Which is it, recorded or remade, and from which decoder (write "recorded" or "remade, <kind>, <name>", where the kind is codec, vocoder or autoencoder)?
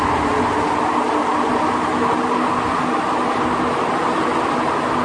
recorded